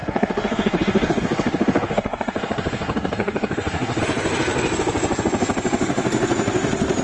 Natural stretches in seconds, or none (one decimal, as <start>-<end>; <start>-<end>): 4.0-7.0

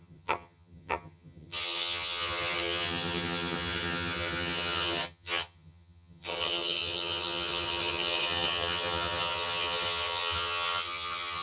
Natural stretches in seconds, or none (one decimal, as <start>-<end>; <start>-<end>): none

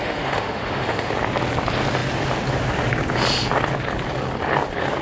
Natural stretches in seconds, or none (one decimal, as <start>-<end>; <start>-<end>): 1.1-5.0

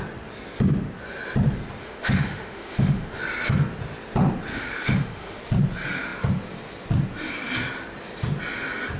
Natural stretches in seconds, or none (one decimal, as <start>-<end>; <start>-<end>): 0.0-1.8; 3.2-4.5; 5.4-9.0